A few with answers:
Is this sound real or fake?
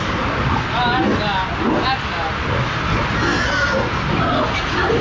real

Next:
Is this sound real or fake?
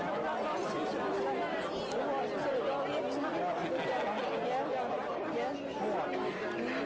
real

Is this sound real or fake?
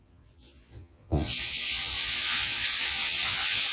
fake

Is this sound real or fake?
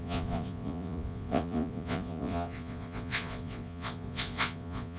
fake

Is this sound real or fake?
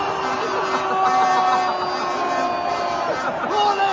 real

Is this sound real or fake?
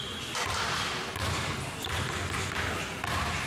real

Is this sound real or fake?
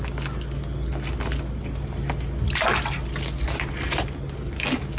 real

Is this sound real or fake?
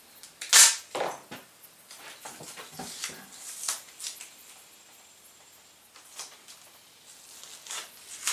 real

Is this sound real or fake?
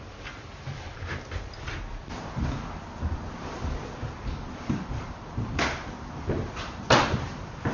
real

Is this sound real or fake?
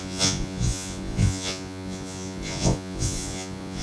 fake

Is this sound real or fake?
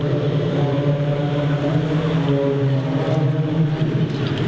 real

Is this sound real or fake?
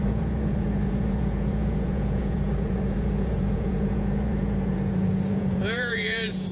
fake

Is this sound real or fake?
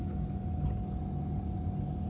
real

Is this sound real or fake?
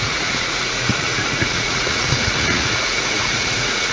fake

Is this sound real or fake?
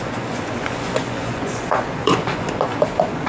fake